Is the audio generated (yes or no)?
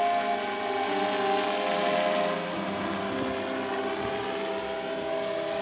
no